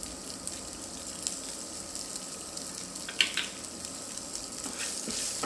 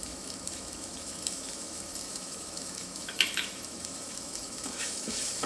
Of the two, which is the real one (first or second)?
first